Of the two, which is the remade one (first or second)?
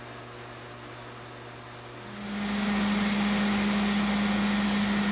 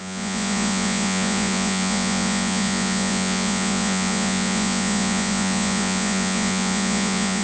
second